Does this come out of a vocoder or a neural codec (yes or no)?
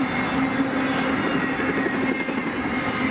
no